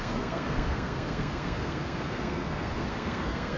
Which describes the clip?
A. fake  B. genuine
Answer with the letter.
A